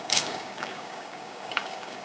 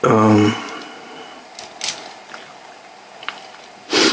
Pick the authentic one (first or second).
second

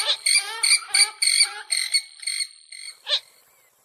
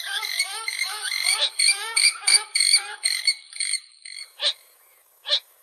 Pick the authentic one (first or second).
first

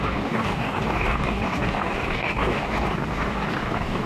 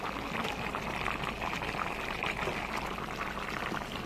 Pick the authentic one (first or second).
second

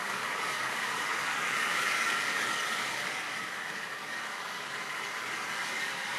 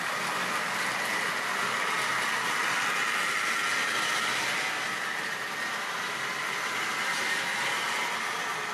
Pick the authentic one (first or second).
second